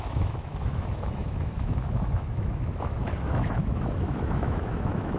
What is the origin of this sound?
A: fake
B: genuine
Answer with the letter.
A